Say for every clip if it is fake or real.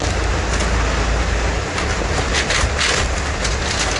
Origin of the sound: real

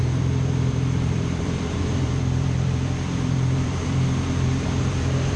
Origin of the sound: fake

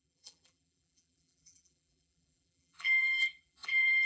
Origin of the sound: fake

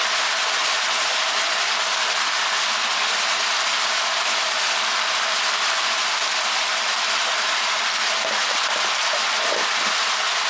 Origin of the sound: fake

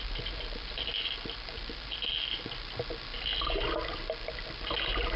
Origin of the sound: fake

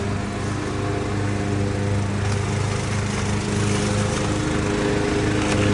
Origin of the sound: real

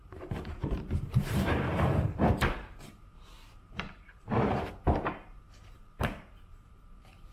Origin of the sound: fake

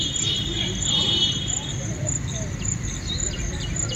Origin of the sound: fake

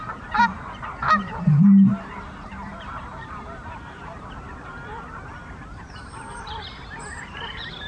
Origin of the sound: fake